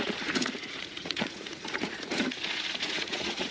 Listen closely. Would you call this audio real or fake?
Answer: fake